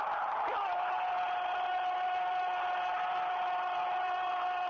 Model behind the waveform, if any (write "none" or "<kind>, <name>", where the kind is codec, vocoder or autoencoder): none